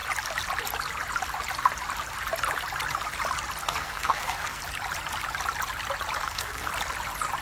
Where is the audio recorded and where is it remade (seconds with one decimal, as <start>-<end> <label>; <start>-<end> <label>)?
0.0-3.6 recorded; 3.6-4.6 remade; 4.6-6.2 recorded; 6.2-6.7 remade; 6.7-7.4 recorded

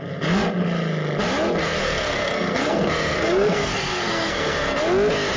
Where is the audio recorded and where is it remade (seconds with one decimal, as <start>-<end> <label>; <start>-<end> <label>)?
0.0-1.6 recorded; 1.6-4.8 remade; 4.8-5.4 recorded

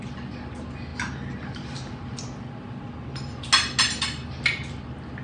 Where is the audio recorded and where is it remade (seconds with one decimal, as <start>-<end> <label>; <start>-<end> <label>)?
0.0-5.2 recorded